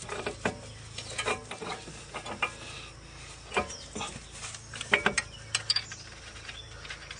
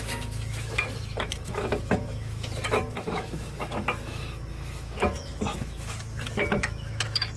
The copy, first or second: second